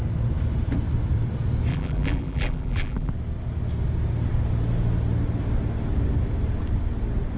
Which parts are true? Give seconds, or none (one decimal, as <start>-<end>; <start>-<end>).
0.0-1.7; 3.1-7.4